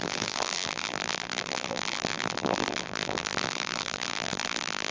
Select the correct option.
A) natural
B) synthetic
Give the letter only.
B